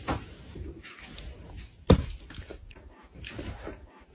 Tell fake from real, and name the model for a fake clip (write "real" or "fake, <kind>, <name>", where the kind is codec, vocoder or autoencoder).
real